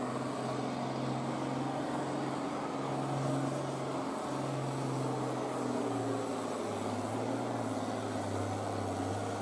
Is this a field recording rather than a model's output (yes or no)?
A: yes